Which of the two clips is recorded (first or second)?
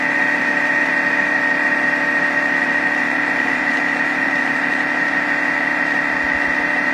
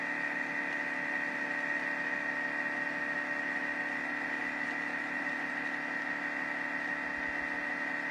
second